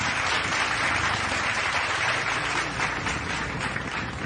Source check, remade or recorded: recorded